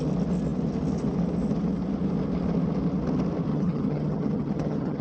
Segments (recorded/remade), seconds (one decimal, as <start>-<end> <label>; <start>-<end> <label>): 0.0-3.5 recorded; 3.5-5.0 remade